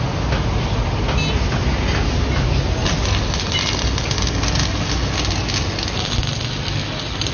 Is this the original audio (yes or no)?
yes